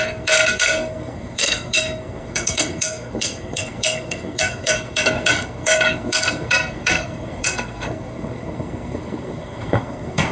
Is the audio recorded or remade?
remade